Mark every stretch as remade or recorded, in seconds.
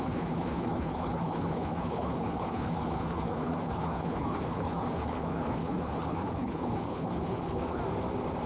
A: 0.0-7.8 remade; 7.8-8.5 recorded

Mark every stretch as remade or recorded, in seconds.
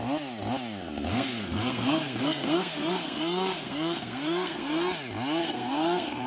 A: 0.0-1.1 recorded; 1.1-4.9 remade; 4.9-5.4 recorded; 5.4-6.3 remade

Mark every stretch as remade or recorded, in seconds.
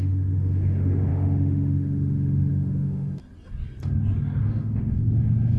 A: 0.0-3.2 remade; 3.2-4.4 recorded; 4.4-5.6 remade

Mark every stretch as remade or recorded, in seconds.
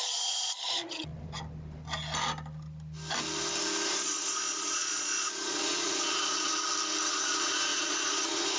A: 0.0-1.1 remade; 1.1-3.9 recorded; 3.9-6.5 remade; 6.5-7.1 recorded; 7.1-8.6 remade